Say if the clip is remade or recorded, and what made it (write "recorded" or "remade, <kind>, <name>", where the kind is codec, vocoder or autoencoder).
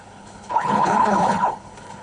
remade, codec, HILCodec